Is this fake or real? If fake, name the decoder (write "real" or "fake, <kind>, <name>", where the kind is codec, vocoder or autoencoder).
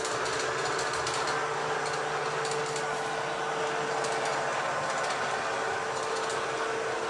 real